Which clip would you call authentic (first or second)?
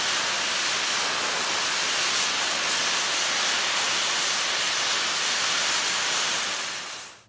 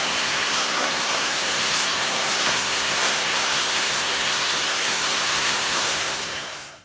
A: first